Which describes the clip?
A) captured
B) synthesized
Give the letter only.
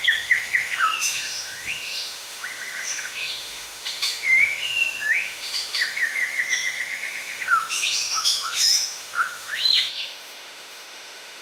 B